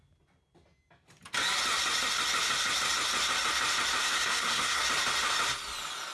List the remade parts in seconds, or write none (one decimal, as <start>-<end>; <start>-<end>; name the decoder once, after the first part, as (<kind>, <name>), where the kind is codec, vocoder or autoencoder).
4.0-4.8 (codec, SNAC)